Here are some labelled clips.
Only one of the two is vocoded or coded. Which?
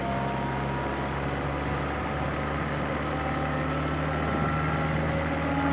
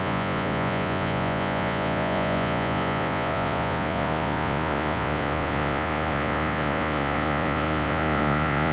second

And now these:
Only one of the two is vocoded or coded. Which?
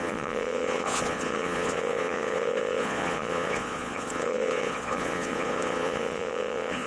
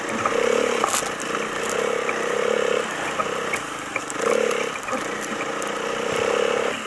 first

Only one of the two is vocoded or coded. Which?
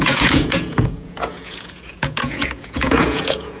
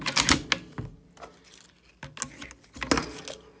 first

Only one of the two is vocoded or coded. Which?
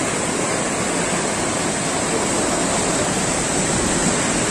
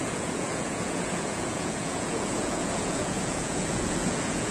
second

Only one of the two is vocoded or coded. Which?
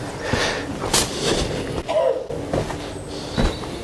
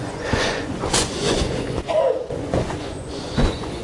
second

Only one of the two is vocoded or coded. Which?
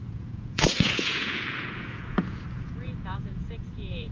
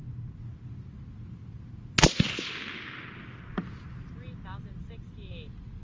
first